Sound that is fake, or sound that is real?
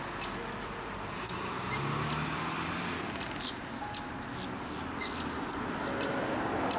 real